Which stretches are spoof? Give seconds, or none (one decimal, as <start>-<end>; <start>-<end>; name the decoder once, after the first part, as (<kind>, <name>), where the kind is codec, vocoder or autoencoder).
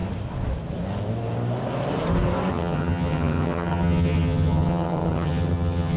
2.5-6.0 (vocoder, HiFi-GAN)